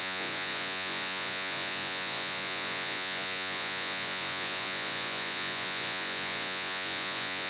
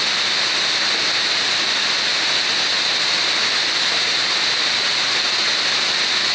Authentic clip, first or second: second